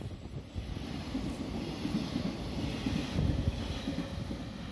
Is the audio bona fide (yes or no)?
yes